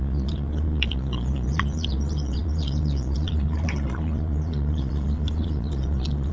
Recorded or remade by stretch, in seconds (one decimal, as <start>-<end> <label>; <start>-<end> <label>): 0.0-6.3 remade